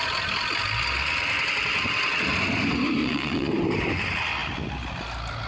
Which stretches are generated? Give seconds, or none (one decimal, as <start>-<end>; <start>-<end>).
3.0-3.5